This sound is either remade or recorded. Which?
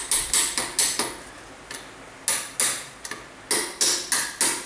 recorded